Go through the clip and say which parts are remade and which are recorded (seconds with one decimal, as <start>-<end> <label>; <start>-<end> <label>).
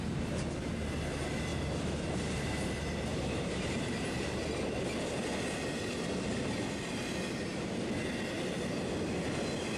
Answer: 0.0-1.5 recorded; 1.5-2.7 remade; 2.7-3.1 recorded; 3.1-4.5 remade; 4.5-9.8 recorded